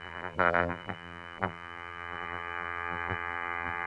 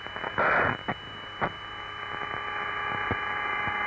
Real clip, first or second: second